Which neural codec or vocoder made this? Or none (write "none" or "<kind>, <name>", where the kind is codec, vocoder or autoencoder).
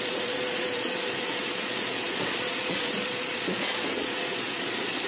vocoder, Vocos